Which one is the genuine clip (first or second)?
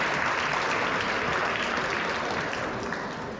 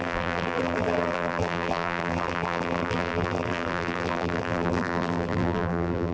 first